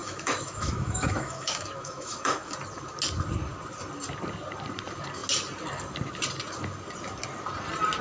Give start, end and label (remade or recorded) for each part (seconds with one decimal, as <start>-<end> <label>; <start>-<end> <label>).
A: 0.0-2.5 remade; 2.5-8.0 recorded